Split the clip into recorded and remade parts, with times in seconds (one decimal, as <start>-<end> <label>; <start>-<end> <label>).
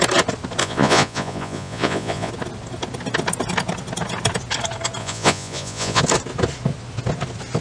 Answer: 0.0-0.6 recorded; 0.6-2.3 remade; 2.3-5.0 recorded; 5.0-6.0 remade; 6.0-7.6 recorded